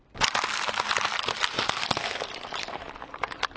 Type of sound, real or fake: real